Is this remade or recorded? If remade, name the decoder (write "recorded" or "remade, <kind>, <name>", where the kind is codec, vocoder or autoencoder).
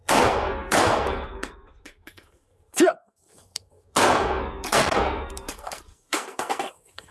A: remade, codec, SNAC